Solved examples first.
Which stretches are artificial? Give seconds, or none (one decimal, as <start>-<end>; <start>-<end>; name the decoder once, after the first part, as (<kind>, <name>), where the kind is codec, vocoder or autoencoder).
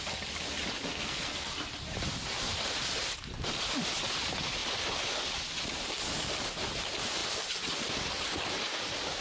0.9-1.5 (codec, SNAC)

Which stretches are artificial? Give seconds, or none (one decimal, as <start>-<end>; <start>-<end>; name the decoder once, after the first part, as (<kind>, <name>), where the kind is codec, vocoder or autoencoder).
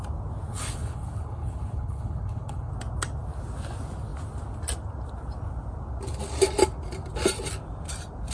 0.5-2.7 (codec, HILCodec)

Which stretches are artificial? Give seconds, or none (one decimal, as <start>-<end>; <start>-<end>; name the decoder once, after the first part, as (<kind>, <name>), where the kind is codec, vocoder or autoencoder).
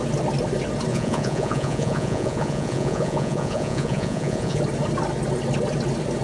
0.9-4.6 (vocoder, Vocos)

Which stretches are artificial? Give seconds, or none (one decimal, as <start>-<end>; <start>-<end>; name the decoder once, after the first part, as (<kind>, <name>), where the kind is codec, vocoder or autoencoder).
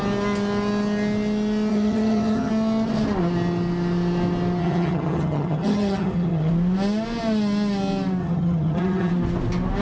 1.7-2.5 (vocoder, HiFi-GAN); 4.6-6.5; 8.2-9.1